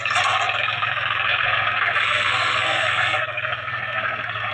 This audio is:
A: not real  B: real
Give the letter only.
A